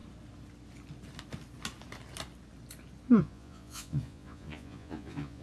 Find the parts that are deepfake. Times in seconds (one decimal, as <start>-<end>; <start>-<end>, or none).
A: 3.2-5.4